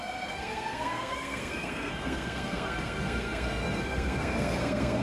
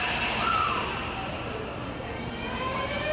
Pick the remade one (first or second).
first